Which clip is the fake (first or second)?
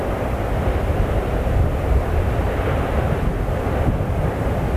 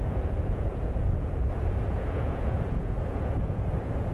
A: second